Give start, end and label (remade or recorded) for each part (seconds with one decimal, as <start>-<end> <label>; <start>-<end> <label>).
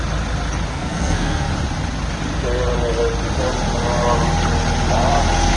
0.0-0.7 recorded; 0.7-1.5 remade; 1.5-5.6 recorded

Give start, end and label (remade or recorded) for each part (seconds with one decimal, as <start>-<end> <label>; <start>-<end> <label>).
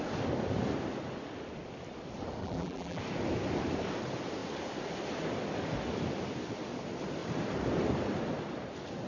0.0-2.4 recorded; 2.4-3.0 remade; 3.0-9.1 recorded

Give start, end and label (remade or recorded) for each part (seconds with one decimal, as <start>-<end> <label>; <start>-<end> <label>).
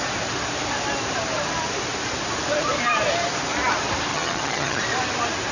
0.0-4.1 recorded; 4.1-4.8 remade; 4.8-5.5 recorded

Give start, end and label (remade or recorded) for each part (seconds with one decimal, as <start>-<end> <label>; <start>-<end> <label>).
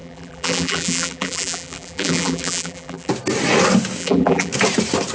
0.0-3.1 remade; 3.1-4.0 recorded; 4.0-4.5 remade; 4.5-5.1 recorded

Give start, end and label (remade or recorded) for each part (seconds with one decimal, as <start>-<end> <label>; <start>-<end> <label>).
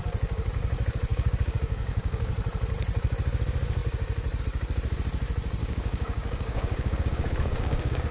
0.0-1.1 recorded; 1.1-2.3 remade; 2.3-5.6 recorded; 5.6-8.1 remade